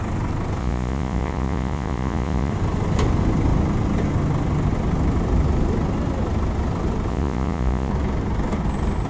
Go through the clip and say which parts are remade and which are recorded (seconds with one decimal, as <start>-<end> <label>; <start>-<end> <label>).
0.0-0.6 recorded; 0.6-2.5 remade; 2.5-7.1 recorded; 7.1-7.9 remade; 7.9-9.1 recorded